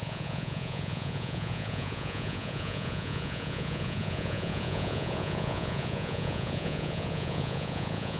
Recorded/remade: remade